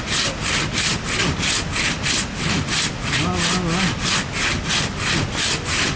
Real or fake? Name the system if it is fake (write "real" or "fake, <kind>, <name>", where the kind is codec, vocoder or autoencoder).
real